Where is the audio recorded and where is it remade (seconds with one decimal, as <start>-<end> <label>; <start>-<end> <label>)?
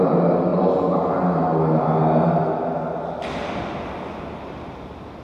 0.0-5.2 recorded